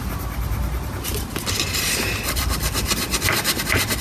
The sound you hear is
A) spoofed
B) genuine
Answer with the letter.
A